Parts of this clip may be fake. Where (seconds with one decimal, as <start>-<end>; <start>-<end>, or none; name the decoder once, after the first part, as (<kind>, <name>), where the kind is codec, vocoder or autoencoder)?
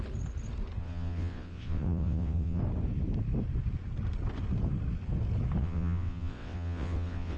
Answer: 0.8-2.6 (vocoder, WaveNeXt); 5.6-7.4